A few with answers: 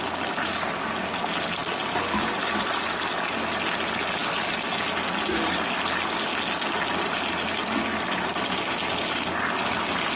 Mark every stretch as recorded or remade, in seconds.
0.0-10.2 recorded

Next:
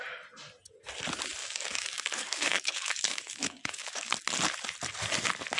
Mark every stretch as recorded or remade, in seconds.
0.0-1.4 recorded; 1.4-4.1 remade; 4.1-5.6 recorded

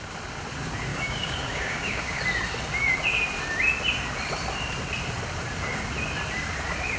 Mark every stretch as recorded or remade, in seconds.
0.0-0.9 recorded; 0.9-2.2 remade; 2.2-7.0 recorded